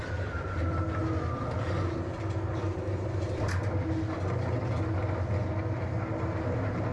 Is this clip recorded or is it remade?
recorded